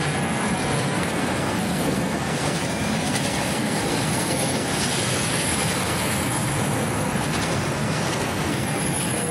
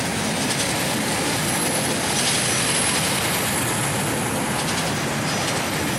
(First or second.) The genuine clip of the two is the second